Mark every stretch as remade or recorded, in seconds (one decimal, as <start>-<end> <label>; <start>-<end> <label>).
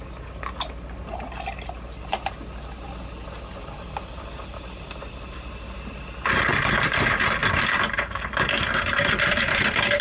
0.0-3.6 recorded; 3.6-4.2 remade; 4.2-7.4 recorded; 7.4-10.0 remade